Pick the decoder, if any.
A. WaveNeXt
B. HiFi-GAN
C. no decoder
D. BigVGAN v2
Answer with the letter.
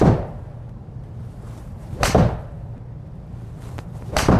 D